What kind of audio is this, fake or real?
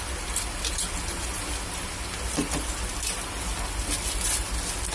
real